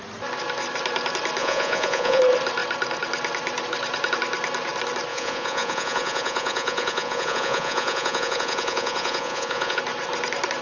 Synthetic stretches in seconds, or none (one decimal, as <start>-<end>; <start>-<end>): 1.4-2.2; 5.1-9.8